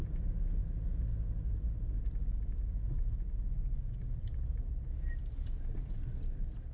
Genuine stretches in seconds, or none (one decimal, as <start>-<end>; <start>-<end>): 0.0-6.7